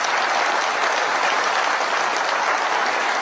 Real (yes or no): yes